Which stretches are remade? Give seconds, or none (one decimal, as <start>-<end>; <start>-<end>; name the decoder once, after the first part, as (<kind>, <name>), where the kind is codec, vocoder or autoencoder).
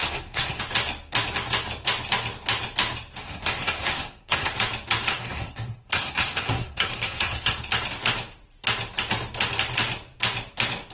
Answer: 0.0-0.6 (codec, SNAC); 3.2-4.5; 5.1-7.6